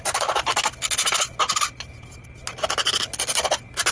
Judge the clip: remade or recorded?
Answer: recorded